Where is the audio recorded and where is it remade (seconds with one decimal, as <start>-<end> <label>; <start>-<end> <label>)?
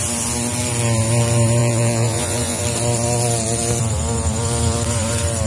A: 0.0-1.6 recorded; 1.6-2.6 remade; 2.6-5.5 recorded